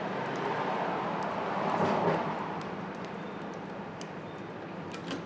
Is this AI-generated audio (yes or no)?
yes